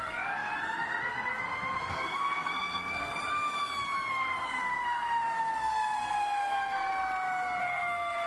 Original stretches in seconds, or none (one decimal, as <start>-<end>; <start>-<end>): 3.1-4.1; 6.9-7.6